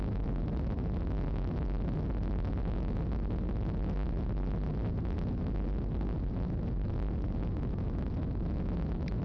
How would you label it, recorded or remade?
recorded